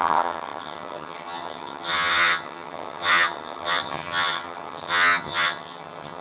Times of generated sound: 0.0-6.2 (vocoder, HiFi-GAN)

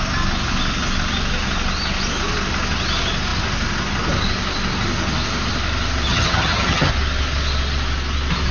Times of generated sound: 6.1-6.9 (vocoder, HiFi-GAN)

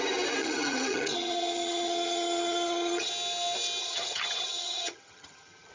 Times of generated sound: 0.4-3.1 (vocoder, HiFi-GAN); 3.8-5.7

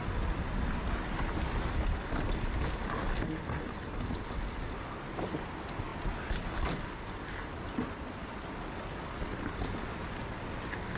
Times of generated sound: none

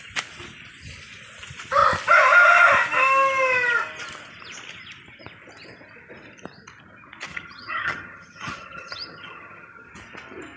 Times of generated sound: 7.3-9.9 (vocoder, HiFi-GAN)

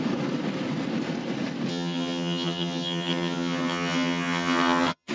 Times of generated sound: 1.7-5.1 (vocoder, HiFi-GAN)

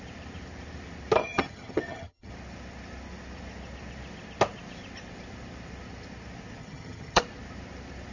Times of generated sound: 1.2-2.3 (vocoder, HiFi-GAN); 6.6-7.2